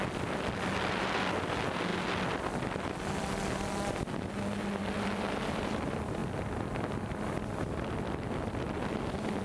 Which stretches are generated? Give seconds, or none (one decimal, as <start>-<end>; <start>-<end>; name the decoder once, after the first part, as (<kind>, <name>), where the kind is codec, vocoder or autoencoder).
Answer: none